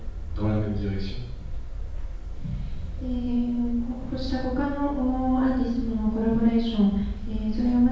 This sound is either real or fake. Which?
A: real